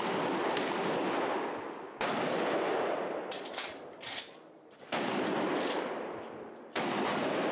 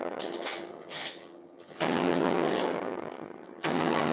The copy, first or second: second